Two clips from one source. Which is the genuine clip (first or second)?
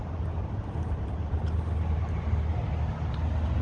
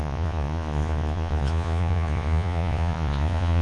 first